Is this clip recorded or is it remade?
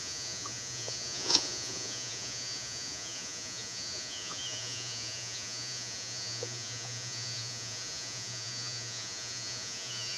remade